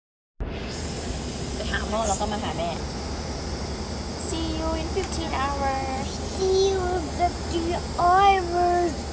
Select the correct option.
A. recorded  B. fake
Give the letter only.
A